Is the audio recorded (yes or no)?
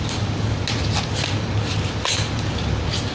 yes